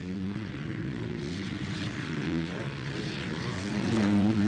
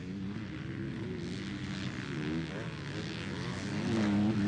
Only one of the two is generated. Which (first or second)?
first